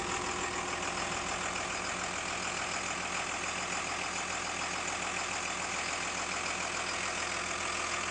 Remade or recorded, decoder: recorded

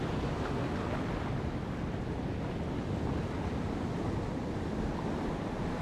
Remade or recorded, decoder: recorded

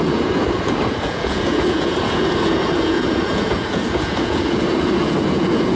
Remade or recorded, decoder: remade, vocoder, Vocos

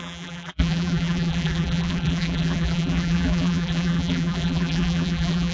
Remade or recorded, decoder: remade, vocoder, BigVGAN v2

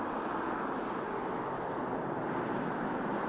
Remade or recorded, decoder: recorded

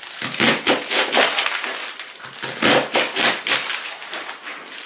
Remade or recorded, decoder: recorded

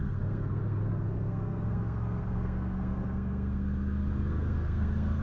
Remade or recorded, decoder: remade, codec, SNAC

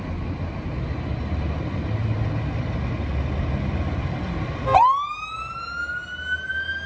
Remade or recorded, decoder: recorded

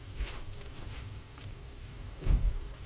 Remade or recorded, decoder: remade, codec, DAC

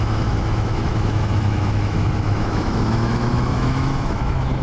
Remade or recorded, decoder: remade, autoencoder, DAC-VAE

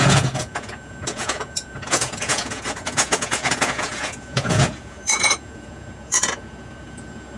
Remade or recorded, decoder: remade, vocoder, Vocos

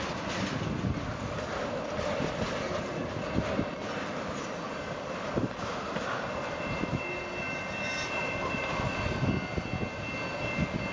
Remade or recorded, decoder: recorded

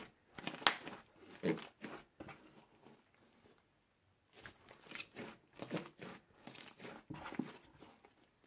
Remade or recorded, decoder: recorded